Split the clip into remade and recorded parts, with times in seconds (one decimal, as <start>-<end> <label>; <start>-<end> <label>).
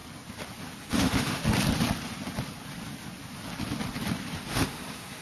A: 0.0-0.8 recorded; 0.8-1.4 remade; 1.4-4.5 recorded; 4.5-5.2 remade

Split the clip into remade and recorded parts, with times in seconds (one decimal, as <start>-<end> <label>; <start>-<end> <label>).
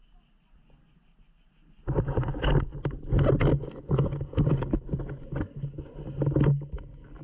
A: 0.0-7.2 recorded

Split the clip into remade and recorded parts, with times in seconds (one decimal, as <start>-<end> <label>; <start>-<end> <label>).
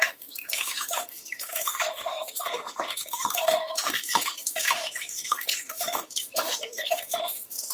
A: 0.0-7.7 remade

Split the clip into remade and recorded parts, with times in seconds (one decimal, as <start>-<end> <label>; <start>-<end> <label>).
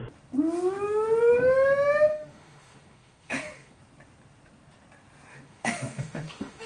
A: 0.0-2.1 recorded; 2.1-3.8 remade; 3.8-5.3 recorded; 5.3-6.7 remade